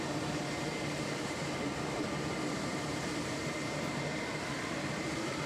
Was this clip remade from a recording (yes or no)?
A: yes